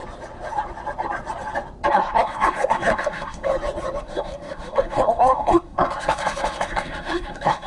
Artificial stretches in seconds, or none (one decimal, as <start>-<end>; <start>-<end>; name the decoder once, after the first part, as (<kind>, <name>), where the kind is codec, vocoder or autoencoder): 1.9-3.5 (codec, SNAC); 4.0-7.7